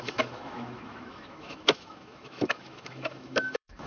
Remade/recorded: remade